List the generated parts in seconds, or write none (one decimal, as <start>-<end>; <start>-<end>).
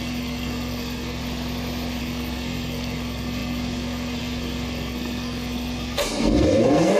0.0-1.2; 2.0-7.0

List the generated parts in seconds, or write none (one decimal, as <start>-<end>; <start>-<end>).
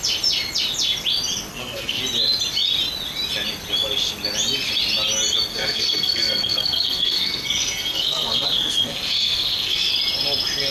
1.5-2.0; 5.5-9.9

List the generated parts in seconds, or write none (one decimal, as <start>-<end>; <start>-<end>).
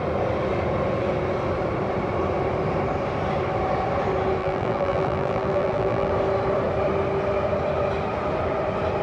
4.4-6.1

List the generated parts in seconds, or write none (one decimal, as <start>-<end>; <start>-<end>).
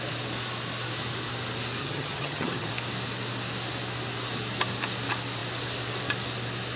1.8-2.7